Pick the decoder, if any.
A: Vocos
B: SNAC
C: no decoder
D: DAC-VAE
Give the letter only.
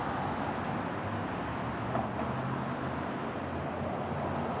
C